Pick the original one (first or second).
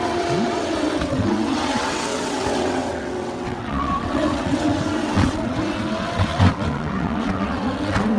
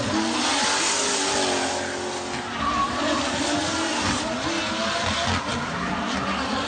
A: second